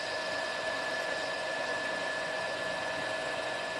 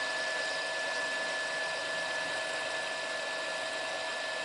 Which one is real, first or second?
second